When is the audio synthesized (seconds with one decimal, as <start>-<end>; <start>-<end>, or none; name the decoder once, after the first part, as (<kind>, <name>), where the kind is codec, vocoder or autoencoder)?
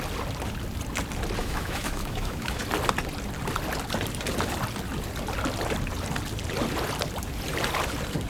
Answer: 1.4-2.6 (autoencoder, DAC-VAE)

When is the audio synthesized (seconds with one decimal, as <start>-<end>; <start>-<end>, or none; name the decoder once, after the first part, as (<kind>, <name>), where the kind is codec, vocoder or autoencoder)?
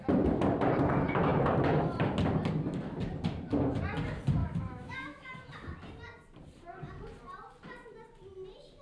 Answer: 4.4-5.3 (autoencoder, DAC-VAE)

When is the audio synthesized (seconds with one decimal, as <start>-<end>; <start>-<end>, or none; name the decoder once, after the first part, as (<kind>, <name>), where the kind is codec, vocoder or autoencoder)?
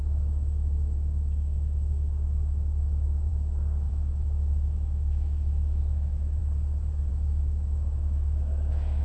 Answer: 0.0-3.3 (autoencoder, DAC-VAE); 3.9-6.4; 7.1-9.0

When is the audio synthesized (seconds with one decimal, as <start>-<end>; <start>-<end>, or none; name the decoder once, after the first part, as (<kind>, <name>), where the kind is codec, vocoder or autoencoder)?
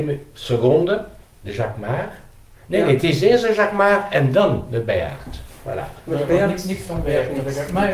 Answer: 0.0-1.5 (autoencoder, DAC-VAE); 3.0-4.4; 5.7-6.9